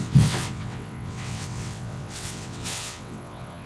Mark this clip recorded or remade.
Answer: remade